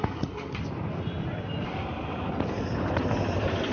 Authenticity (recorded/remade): recorded